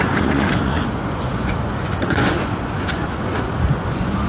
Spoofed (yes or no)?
yes